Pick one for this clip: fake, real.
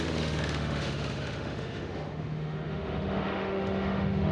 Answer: fake